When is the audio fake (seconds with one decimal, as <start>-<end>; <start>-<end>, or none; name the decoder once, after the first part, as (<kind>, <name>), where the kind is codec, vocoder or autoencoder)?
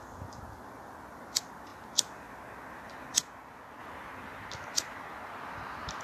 none